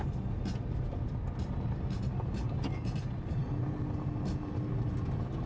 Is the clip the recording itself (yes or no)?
yes